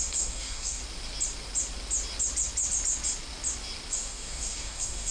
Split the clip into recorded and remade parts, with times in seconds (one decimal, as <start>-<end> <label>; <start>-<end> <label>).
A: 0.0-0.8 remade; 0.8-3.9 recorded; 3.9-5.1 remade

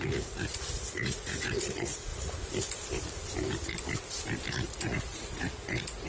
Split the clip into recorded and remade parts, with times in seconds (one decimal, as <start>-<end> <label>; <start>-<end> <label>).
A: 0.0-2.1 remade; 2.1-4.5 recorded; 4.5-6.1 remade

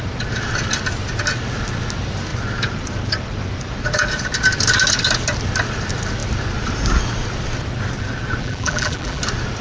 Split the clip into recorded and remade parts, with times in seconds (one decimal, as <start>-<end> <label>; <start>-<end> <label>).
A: 0.0-8.4 recorded; 8.4-9.2 remade; 9.2-9.6 recorded